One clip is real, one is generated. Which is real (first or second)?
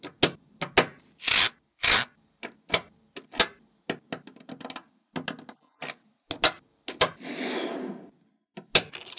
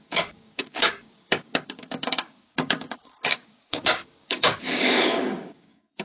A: first